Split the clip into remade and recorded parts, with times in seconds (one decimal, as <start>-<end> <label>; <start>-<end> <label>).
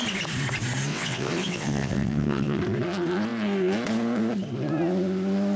0.0-0.9 recorded; 0.9-2.6 remade; 2.6-5.6 recorded